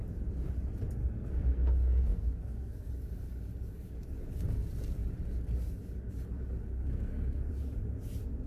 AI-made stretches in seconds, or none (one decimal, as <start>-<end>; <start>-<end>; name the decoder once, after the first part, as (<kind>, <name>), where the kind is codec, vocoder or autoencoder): 1.0-2.9 (codec, SNAC); 6.6-7.5